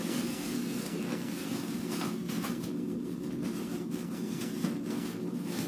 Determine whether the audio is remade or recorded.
remade